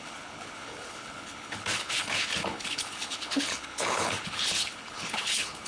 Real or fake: fake